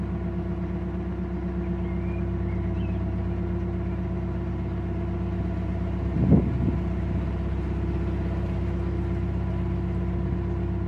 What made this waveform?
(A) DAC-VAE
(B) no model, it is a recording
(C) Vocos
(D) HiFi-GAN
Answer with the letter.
B